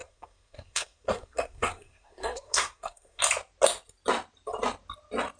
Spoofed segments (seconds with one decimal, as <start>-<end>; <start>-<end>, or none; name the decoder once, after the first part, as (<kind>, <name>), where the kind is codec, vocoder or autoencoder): 0.0-3.2 (codec, SNAC)